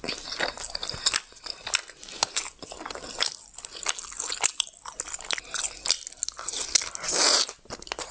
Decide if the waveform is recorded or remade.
recorded